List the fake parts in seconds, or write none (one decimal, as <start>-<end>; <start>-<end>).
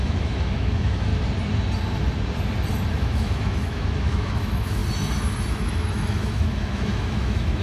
0.0-1.1; 2.9-4.8; 5.5-7.6